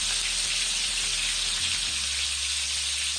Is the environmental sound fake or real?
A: real